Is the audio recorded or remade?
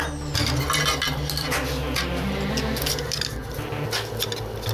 recorded